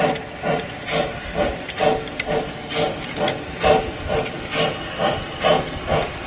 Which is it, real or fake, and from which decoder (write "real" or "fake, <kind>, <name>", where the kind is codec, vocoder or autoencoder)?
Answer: real